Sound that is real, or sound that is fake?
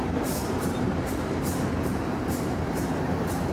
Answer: fake